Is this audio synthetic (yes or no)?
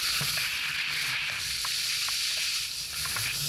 no